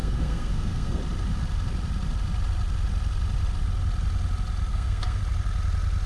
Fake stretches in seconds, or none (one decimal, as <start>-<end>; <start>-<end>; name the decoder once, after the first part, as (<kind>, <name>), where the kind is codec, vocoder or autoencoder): 0.0-1.0 (codec, SNAC); 4.7-5.2